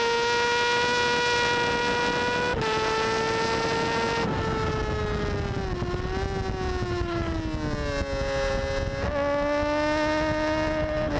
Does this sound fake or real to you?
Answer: real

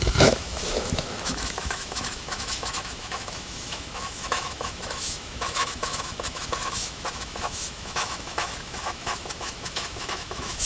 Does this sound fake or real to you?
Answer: fake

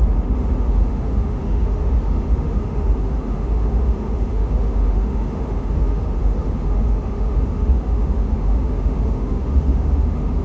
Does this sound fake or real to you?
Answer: fake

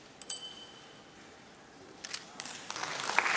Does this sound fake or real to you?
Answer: real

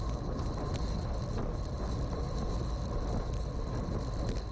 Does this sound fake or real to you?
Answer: real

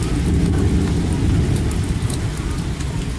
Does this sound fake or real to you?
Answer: real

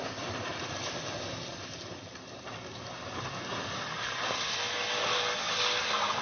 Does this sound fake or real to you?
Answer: real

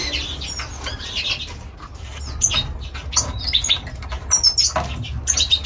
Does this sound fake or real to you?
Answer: real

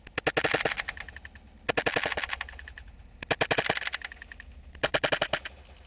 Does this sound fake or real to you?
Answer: real